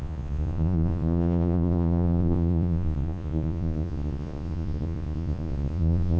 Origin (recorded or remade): remade